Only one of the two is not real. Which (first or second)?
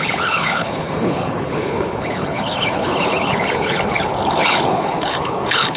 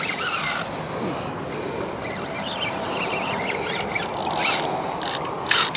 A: first